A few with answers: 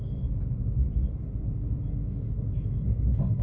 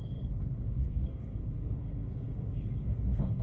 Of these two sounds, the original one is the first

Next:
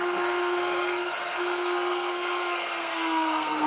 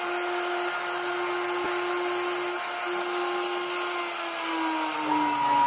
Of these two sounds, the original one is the second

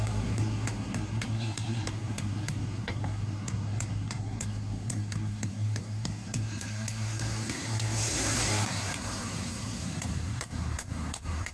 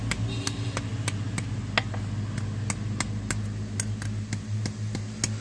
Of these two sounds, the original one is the second